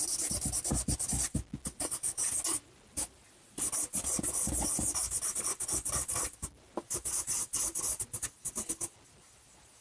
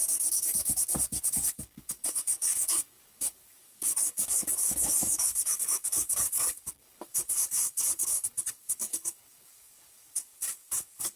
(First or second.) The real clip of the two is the first